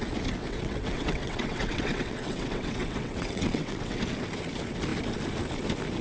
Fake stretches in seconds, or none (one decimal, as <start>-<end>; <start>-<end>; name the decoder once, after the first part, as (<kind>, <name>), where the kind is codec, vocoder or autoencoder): 0.4-4.0 (vocoder, WaveNeXt)